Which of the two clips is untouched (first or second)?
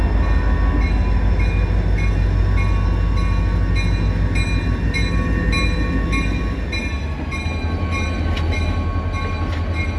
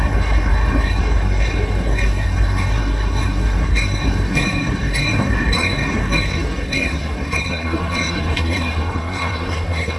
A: first